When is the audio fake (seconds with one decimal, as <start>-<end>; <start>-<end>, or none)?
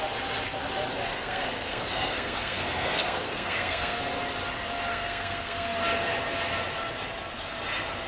1.1-4.0; 4.9-5.8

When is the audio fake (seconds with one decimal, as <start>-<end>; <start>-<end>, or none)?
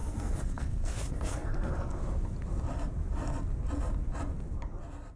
0.0-2.0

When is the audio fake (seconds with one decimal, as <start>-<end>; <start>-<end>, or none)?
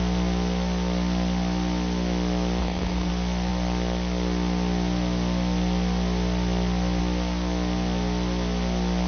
2.6-3.1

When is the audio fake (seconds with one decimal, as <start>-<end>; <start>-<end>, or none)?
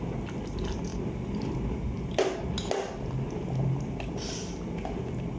none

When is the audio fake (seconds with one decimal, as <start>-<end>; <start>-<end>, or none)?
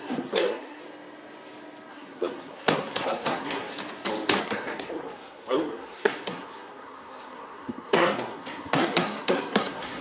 0.0-0.8; 1.9-3.7; 4.4-10.0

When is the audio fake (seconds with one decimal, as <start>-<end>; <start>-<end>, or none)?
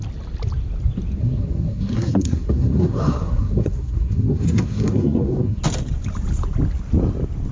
1.2-5.6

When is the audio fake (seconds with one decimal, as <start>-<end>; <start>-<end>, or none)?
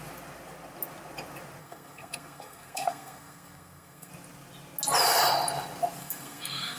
1.6-4.1; 6.0-6.8